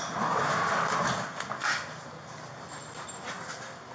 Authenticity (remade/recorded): recorded